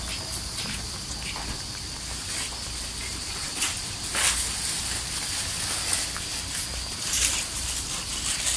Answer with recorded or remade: recorded